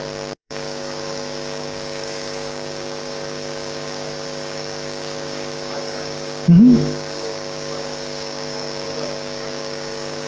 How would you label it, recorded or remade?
remade